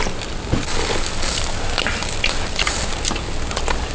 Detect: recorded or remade recorded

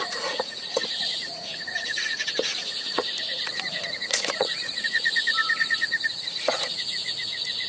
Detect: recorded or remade remade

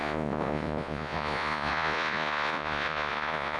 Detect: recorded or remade remade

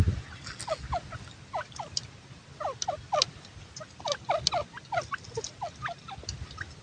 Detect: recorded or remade recorded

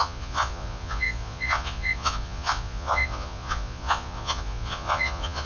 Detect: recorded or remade remade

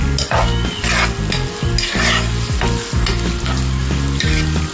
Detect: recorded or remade recorded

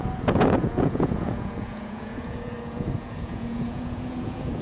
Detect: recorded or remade remade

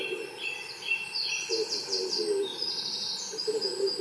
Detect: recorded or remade recorded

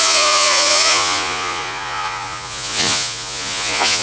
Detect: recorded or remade remade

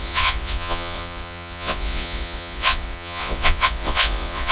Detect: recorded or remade remade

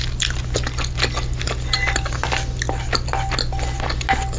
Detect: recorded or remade recorded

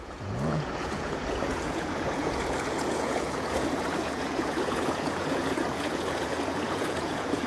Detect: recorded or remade remade